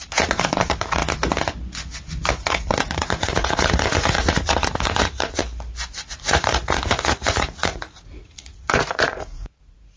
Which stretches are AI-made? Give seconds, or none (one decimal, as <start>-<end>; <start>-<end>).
0.0-1.0; 2.3-5.4; 6.1-10.0